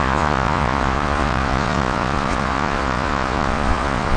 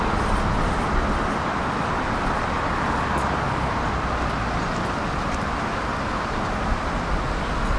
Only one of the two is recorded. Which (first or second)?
second